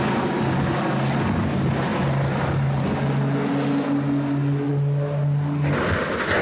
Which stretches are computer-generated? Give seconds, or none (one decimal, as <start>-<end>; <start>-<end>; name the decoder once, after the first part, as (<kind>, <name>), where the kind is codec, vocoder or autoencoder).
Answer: none